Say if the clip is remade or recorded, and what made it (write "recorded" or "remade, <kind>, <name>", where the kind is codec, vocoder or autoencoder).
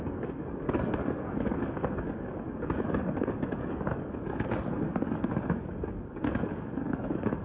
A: remade, codec, DAC